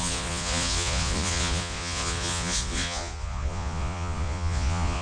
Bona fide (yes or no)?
no